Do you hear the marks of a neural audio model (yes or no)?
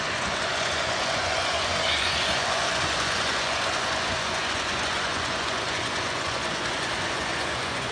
yes